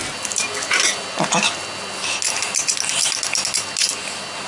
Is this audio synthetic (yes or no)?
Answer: no